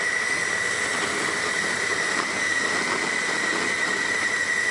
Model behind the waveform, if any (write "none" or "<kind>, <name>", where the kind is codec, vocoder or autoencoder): none